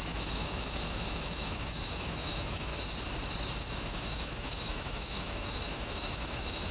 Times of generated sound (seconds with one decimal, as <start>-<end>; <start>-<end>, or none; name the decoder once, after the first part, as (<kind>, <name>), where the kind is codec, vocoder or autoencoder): 0.0-2.7 (autoencoder, DAC-VAE); 3.6-6.7